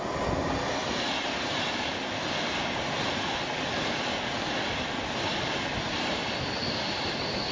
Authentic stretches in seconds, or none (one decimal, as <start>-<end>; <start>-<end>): 0.0-0.8; 2.0-7.5